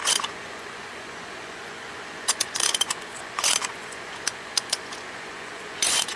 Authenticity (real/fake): fake